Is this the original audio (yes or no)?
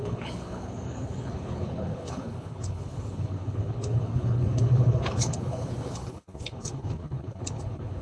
no